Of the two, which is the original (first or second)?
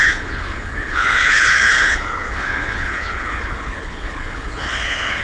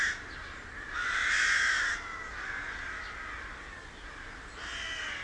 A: second